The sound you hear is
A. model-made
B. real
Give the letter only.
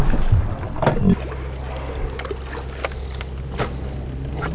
B